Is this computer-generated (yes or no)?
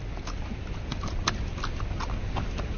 no